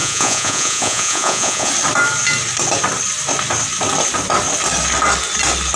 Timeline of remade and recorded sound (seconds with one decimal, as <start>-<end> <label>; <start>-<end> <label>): 0.0-1.7 remade; 1.7-5.8 recorded